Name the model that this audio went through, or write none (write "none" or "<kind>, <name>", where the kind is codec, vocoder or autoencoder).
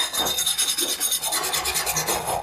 none